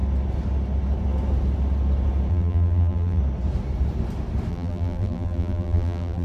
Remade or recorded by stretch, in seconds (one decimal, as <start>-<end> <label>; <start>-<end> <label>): 0.0-2.3 recorded; 2.3-3.2 remade; 3.2-4.5 recorded; 4.5-6.2 remade